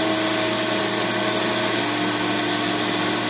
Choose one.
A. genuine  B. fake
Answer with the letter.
A